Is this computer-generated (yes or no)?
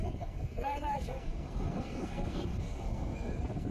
yes